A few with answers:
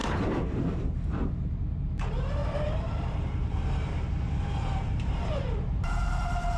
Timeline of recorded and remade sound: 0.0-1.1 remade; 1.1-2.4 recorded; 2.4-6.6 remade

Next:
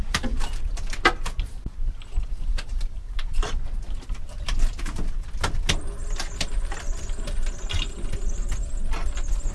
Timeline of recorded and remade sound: 0.0-9.5 recorded

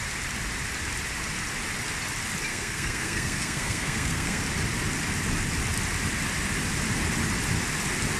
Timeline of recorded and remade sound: 0.0-2.5 recorded; 2.5-4.4 remade; 4.4-8.2 recorded

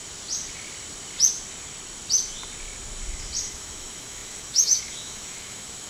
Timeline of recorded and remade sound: 0.0-3.5 recorded; 3.5-5.9 remade

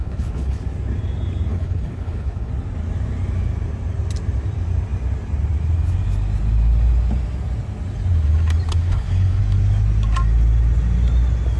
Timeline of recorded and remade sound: 0.0-0.6 remade; 0.6-1.5 recorded; 1.5-2.5 remade; 2.5-8.8 recorded; 8.8-9.4 remade; 9.4-11.6 recorded